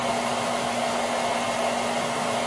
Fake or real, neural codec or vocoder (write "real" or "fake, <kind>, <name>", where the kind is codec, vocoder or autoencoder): real